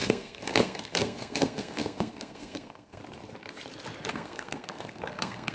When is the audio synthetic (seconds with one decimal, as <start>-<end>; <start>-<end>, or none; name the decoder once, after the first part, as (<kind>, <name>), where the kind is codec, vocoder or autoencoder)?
0.0-3.0 (codec, SNAC); 4.1-5.5